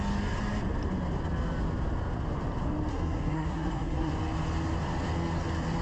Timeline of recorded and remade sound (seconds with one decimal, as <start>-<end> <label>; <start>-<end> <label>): 0.0-2.9 recorded; 2.9-4.1 remade; 4.1-5.8 recorded